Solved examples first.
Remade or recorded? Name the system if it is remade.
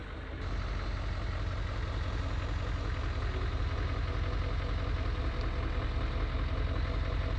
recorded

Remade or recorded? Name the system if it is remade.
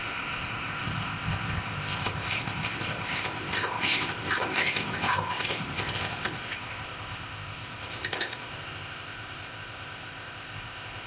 remade, codec, ZipCodec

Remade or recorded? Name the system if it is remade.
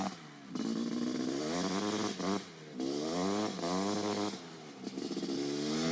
recorded